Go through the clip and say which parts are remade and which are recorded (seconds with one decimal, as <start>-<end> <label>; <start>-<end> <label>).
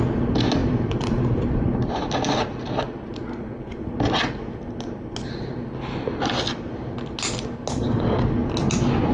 0.0-0.6 recorded; 0.6-1.5 remade; 1.5-3.7 recorded; 3.7-4.4 remade; 4.4-9.1 recorded